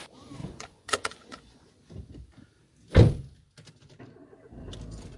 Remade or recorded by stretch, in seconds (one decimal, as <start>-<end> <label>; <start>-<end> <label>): 0.0-0.4 recorded; 0.4-1.7 remade; 1.7-5.2 recorded